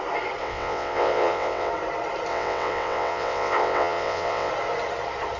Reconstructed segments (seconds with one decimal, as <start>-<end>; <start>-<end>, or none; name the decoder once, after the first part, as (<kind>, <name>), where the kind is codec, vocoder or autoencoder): 0.4-1.7 (vocoder, WaveNeXt); 2.3-4.5